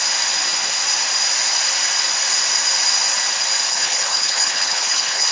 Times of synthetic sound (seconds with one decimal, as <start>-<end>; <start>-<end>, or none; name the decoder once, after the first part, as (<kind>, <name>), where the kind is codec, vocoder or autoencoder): 3.7-5.3 (codec, HILCodec)